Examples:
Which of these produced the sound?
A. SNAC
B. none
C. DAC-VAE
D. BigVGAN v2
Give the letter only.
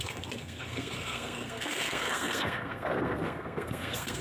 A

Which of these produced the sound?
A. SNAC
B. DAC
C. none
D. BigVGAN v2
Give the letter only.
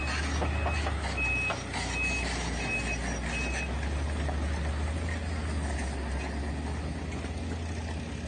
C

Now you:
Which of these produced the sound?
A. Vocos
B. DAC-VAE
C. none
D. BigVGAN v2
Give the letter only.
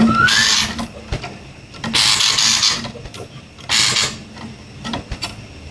C